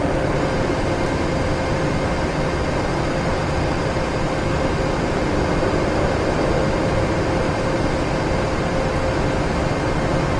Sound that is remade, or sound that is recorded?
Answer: recorded